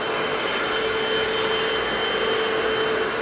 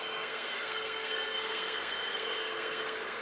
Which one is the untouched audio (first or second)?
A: first